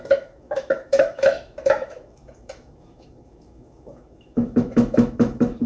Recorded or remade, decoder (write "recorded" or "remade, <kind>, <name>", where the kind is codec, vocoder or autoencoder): remade, autoencoder, DAC-VAE